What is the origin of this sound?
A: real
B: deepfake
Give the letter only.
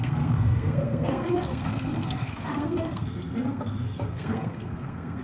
B